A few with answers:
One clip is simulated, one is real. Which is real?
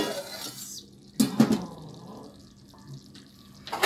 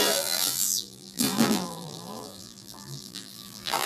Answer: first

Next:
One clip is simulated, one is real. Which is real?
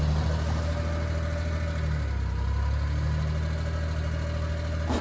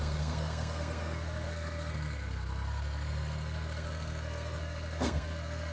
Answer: first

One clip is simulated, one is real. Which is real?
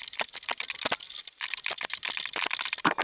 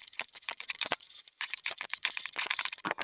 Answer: first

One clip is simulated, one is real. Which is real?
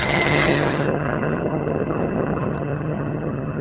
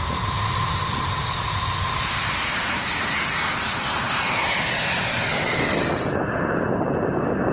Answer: second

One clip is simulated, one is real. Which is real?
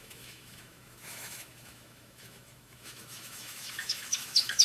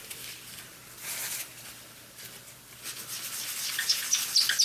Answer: second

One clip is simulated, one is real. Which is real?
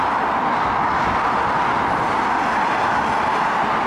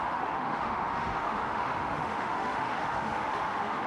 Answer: first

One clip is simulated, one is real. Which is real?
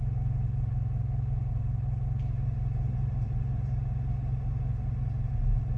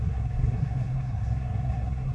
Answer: first